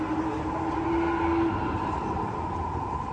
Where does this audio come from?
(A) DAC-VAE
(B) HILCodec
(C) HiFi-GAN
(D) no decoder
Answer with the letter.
D